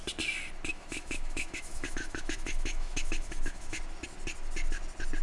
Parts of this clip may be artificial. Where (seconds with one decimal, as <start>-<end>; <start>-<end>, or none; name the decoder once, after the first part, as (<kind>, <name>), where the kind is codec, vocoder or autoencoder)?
0.7-3.8 (autoencoder, DAC-VAE)